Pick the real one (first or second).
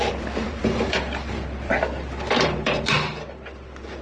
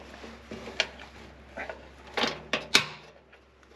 second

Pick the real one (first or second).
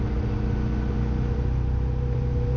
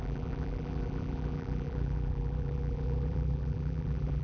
first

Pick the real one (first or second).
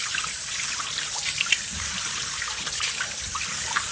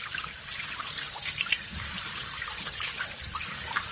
first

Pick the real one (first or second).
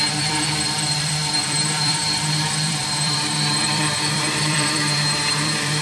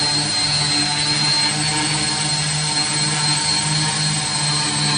second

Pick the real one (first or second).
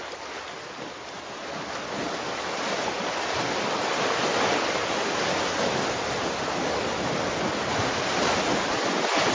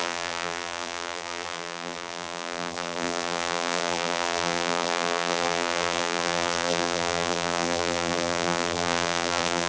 first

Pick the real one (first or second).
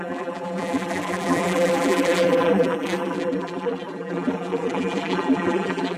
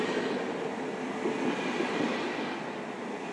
second